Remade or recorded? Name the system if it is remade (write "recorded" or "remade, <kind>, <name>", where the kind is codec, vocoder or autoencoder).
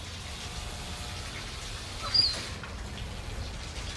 recorded